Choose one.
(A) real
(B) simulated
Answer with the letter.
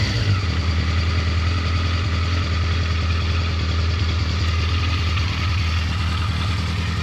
A